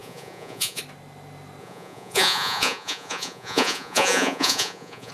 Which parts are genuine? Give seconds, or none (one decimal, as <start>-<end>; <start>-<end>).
0.8-1.6